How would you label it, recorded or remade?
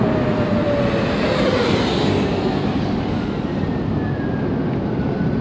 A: recorded